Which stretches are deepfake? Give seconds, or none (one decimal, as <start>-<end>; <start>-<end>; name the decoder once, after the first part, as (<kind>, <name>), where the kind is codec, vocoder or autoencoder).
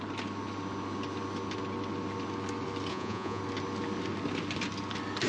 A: 2.9-3.4 (vocoder, Vocos)